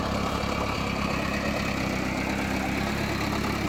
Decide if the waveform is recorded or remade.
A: recorded